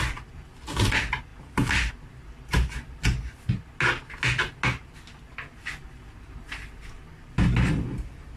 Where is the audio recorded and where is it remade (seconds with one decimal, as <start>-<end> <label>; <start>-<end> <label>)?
0.0-1.3 recorded; 1.3-1.9 remade; 1.9-8.4 recorded